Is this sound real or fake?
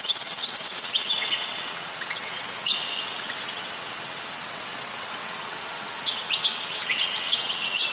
fake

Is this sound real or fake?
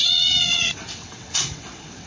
fake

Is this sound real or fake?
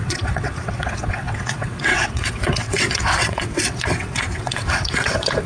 fake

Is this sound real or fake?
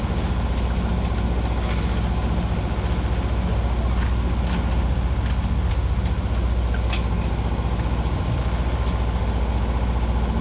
real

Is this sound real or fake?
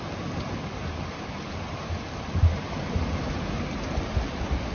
real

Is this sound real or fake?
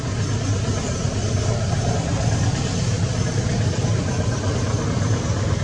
real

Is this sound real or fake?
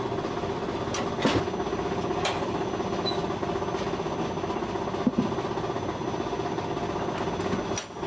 real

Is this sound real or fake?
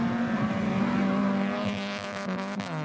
real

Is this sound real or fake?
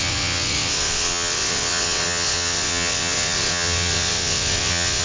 fake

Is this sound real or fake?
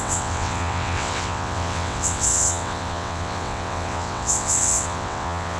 fake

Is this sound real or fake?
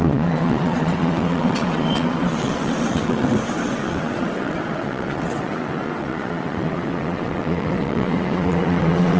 fake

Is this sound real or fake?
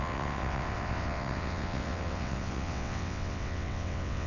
fake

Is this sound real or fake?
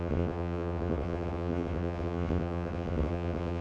fake